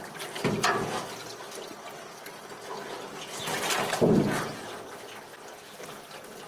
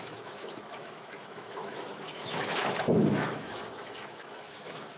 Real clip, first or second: first